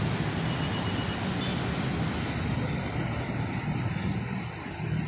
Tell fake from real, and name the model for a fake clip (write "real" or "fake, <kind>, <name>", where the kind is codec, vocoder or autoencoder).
real